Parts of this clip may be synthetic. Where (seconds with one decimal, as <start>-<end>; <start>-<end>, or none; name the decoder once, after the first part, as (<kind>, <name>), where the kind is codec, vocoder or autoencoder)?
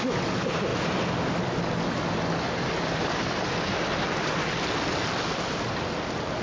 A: none